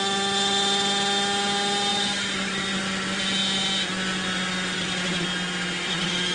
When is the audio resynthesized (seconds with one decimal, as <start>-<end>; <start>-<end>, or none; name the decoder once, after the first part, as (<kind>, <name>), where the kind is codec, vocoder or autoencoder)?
1.9-2.8 (vocoder, BigVGAN v2)